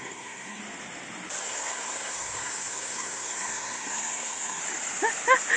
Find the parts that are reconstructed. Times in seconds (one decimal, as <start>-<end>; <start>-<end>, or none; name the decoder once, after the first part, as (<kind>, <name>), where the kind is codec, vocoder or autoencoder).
0.0-0.6 (codec, SNAC); 1.4-4.6